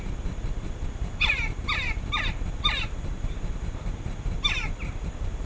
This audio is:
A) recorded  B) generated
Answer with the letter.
B